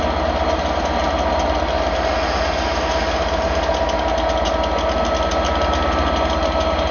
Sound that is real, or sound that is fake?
real